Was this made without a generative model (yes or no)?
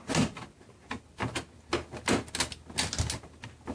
yes